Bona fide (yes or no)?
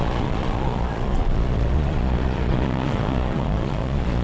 no